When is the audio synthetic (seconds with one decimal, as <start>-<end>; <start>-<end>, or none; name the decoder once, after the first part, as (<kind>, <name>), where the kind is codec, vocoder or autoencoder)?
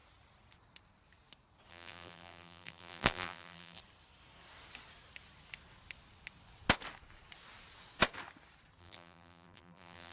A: 1.7-3.8 (vocoder, BigVGAN v2); 8.8-10.1